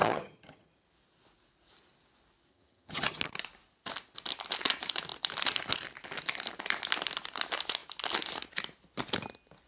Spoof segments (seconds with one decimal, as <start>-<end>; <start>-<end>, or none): 0.0-0.7; 2.5-3.2